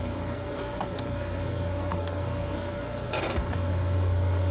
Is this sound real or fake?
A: fake